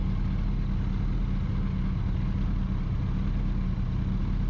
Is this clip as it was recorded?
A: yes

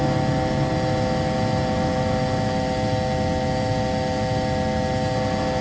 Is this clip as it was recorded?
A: yes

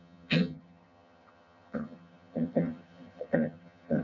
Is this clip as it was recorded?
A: no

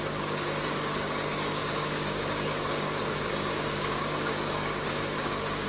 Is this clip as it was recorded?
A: no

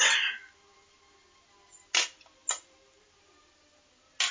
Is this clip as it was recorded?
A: yes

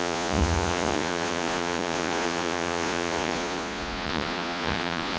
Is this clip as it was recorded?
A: no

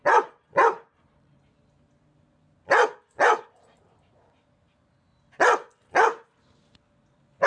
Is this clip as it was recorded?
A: yes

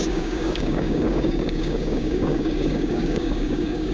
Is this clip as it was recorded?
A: no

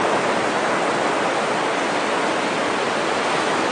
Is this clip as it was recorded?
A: yes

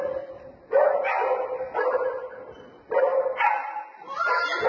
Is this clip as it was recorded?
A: yes